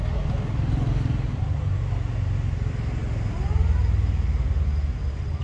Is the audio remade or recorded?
recorded